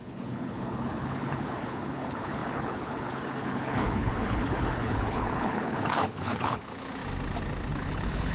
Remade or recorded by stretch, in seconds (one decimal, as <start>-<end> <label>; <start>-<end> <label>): 0.0-7.0 remade; 7.0-7.7 recorded; 7.7-8.3 remade